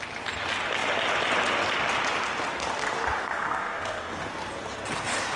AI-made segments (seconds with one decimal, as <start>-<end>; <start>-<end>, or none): 3.2-4.2